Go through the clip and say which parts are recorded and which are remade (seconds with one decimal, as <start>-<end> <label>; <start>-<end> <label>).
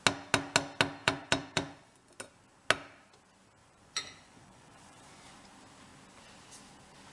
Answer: 0.0-1.0 recorded; 1.0-2.2 remade; 2.2-3.6 recorded; 3.6-5.4 remade; 5.4-7.1 recorded